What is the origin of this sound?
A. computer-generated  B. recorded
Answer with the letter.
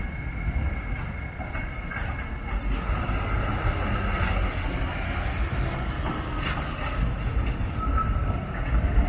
B